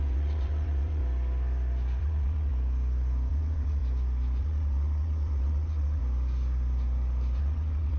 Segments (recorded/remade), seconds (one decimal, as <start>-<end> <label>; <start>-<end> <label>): 0.0-1.0 remade; 1.0-2.0 recorded; 2.0-2.5 remade; 2.5-3.3 recorded; 3.3-3.8 remade; 3.8-4.4 recorded; 4.4-6.0 remade; 6.0-7.4 recorded; 7.4-8.0 remade